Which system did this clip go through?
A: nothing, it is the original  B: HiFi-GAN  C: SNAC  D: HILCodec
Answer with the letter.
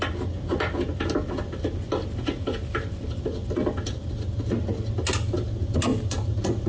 A